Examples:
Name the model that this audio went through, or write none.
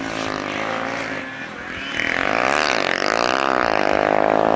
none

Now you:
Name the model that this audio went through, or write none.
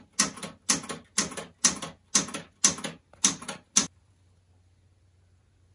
none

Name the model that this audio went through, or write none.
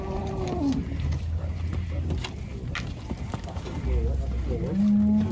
none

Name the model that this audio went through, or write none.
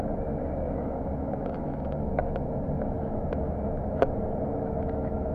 autoencoder, DAC-VAE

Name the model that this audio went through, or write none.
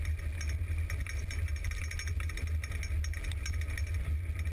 none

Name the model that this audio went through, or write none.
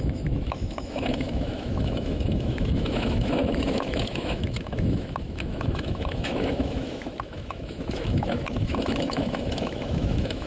autoencoder, DAC-VAE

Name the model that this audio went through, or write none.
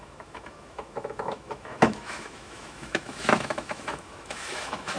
autoencoder, DAC-VAE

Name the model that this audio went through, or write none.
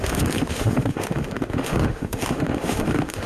autoencoder, DAC-VAE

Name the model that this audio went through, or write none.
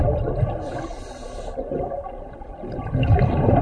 none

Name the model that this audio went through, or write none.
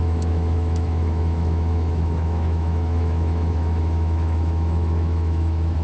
autoencoder, DAC-VAE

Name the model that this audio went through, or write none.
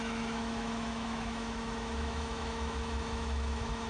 autoencoder, DAC-VAE